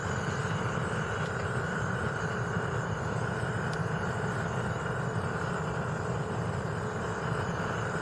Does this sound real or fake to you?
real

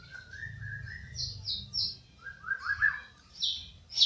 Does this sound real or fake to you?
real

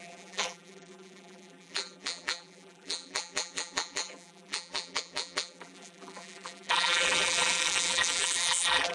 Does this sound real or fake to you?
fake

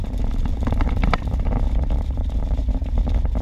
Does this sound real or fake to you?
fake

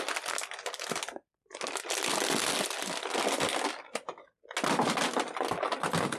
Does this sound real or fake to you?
real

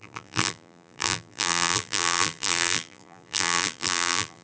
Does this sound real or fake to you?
fake